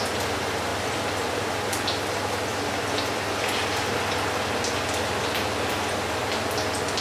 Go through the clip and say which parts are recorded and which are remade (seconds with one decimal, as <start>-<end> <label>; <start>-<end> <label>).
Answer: 0.0-7.0 recorded